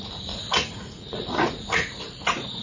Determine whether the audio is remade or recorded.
remade